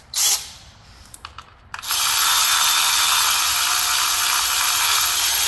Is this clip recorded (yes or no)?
no